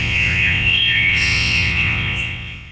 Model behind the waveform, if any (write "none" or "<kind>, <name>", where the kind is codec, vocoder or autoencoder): vocoder, WaveNeXt